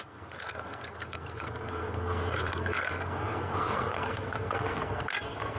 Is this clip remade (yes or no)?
yes